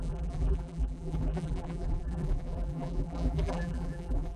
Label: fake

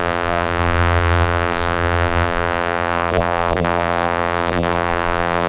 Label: fake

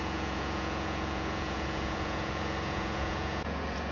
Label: fake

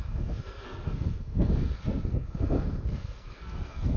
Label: fake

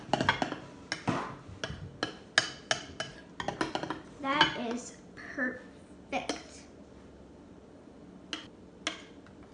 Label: real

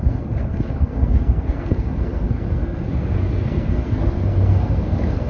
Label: fake